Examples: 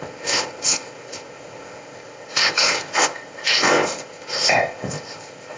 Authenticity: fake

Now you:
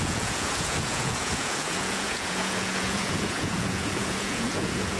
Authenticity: fake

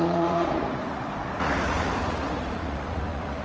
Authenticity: fake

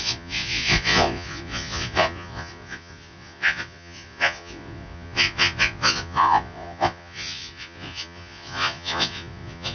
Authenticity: fake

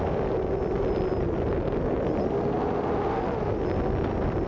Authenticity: real